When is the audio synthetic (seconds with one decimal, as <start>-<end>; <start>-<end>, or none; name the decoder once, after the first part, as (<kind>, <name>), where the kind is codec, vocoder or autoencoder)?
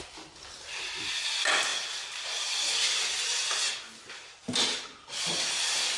none